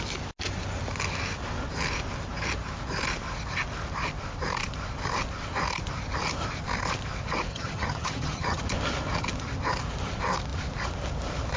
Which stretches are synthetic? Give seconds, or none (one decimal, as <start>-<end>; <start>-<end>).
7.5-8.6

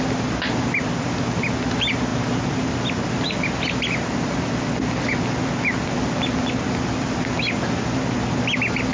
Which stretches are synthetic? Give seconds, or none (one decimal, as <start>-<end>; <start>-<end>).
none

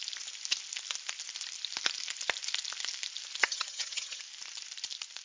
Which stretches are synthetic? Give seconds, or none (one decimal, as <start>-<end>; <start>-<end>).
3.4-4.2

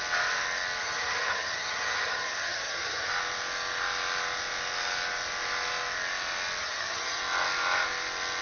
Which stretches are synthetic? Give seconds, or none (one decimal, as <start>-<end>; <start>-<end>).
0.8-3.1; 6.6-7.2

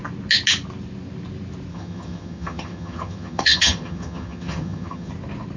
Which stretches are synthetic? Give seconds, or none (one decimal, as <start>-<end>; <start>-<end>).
1.7-5.1

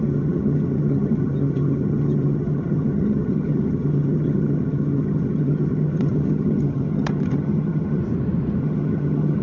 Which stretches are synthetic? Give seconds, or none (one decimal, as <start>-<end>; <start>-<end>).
0.0-8.0; 8.6-9.4

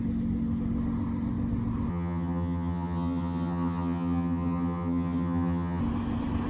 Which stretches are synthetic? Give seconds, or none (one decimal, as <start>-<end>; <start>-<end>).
1.9-5.8

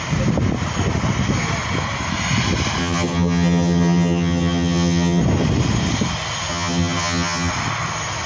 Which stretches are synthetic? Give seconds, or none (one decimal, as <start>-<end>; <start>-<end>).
2.8-5.2; 6.5-7.5